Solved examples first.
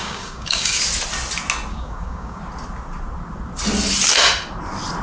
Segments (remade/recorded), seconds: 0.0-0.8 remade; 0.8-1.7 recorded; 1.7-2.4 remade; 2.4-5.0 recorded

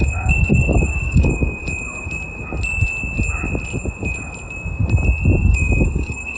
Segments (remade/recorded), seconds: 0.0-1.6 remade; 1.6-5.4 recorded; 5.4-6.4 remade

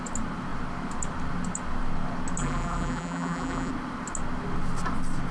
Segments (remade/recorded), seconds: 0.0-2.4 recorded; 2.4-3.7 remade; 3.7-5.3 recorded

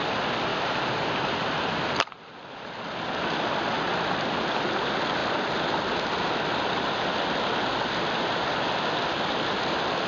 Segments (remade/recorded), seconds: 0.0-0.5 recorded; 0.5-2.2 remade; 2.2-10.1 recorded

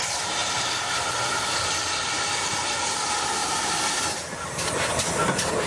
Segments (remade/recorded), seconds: 0.0-5.7 remade

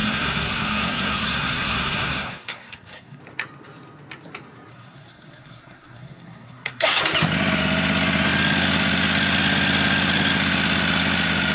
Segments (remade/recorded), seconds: 0.0-3.2 remade; 3.2-4.7 recorded; 4.7-7.0 remade; 7.0-11.5 recorded

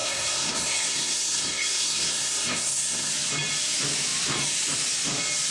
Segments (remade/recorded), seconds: 0.0-3.1 remade; 3.1-5.5 recorded